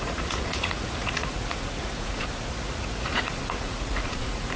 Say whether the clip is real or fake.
fake